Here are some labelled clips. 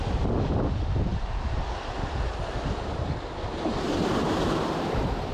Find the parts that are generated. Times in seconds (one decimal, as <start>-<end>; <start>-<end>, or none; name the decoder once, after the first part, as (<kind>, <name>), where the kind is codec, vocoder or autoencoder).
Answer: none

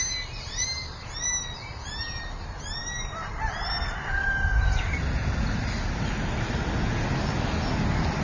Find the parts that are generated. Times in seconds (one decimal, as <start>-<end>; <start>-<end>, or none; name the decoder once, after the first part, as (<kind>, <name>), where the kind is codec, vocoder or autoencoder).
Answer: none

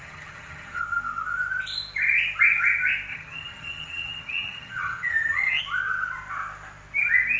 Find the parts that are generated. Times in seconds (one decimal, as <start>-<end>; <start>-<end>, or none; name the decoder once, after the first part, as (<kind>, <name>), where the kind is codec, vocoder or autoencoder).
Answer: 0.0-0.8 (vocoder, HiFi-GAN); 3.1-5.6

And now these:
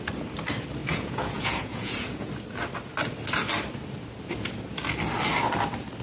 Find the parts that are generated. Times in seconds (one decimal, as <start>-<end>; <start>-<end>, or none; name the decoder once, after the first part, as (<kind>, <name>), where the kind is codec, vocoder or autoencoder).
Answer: 0.8-2.3 (vocoder, Vocos)

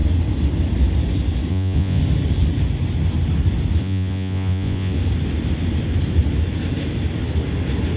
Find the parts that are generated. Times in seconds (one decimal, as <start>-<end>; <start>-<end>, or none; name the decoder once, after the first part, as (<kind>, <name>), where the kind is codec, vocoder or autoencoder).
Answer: 1.5-2.0 (vocoder, Vocos); 3.8-5.0